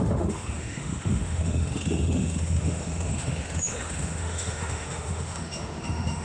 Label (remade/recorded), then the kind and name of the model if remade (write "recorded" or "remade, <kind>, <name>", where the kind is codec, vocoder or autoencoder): remade, autoencoder, DAC-VAE